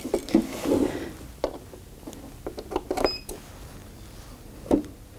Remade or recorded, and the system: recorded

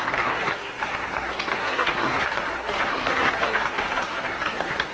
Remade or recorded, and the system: remade, codec, SNAC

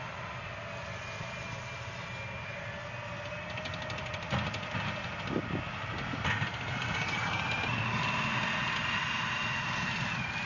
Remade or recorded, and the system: recorded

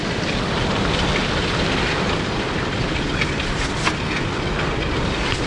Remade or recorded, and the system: recorded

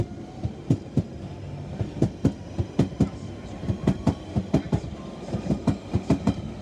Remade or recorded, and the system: recorded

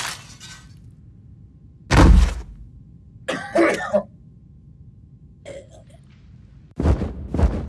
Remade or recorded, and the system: recorded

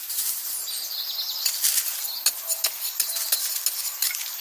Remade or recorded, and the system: recorded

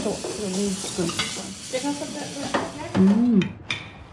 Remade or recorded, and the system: recorded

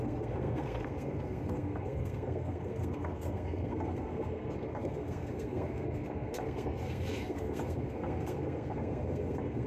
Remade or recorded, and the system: remade, codec, SNAC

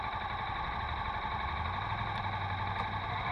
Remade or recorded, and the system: recorded